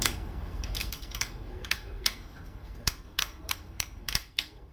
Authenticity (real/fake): fake